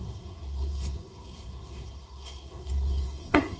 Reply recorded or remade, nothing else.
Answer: remade